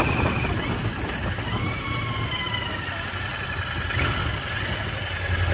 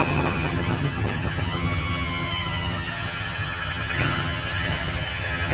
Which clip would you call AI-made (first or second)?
second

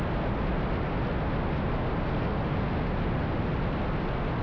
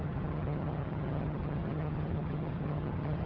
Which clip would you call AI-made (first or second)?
second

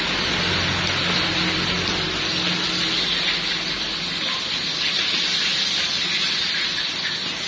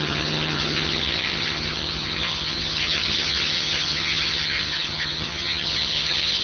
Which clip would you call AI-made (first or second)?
second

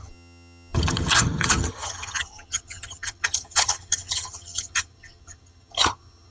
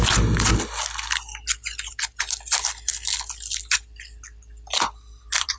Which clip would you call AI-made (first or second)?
first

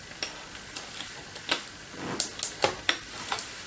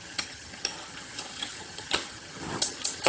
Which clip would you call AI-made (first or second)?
second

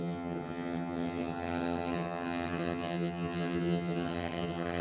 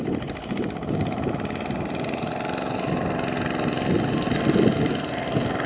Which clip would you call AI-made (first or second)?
first